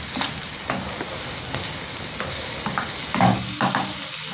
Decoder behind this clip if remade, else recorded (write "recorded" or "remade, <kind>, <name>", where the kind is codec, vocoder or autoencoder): recorded